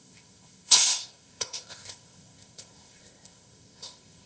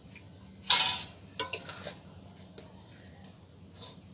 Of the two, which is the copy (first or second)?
first